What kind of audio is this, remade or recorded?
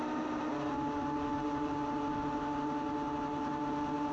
recorded